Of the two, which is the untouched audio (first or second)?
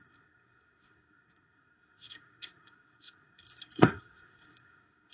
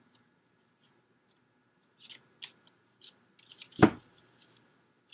second